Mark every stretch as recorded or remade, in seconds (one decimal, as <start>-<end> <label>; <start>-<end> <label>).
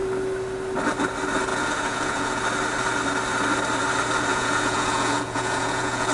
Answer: 0.0-1.5 recorded; 1.5-2.4 remade; 2.4-4.3 recorded; 4.3-6.1 remade